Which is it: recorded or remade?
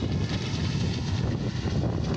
recorded